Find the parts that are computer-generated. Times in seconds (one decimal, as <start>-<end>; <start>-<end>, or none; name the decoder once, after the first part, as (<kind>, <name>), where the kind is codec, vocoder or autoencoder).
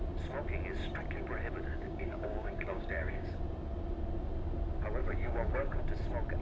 1.7-3.4 (codec, DAC); 5.0-5.8